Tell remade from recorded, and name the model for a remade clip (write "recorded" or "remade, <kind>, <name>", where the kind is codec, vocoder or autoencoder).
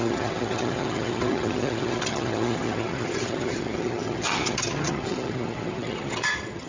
remade, vocoder, HiFi-GAN